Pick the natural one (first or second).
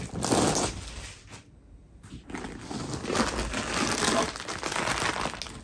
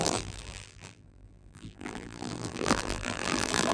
first